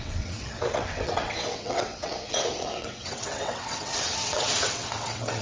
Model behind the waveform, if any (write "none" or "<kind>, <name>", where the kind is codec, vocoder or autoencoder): vocoder, WaveNeXt